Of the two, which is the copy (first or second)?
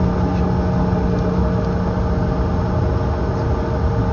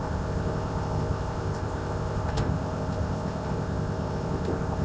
second